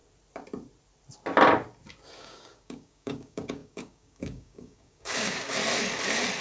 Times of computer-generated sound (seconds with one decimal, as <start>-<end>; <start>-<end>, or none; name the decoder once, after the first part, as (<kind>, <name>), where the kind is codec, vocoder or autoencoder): 2.2-5.6 (codec, DAC)